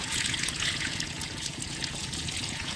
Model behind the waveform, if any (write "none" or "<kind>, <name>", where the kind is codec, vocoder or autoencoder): vocoder, Vocos